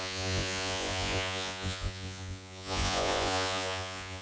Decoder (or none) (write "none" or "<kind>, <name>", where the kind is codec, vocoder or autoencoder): vocoder, Vocos